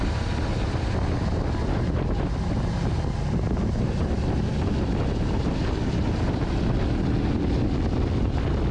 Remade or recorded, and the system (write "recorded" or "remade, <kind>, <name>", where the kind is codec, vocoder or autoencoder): recorded